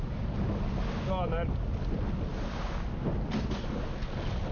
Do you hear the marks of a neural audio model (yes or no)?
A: no